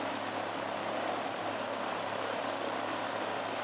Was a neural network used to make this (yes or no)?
no